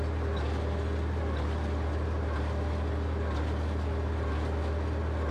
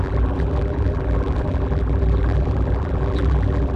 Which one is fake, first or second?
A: second